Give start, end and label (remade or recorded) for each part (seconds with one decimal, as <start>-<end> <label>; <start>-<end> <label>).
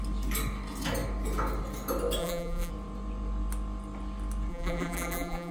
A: 0.0-2.2 recorded; 2.2-2.7 remade; 2.7-4.5 recorded; 4.5-5.5 remade